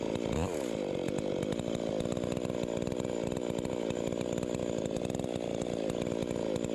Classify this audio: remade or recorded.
recorded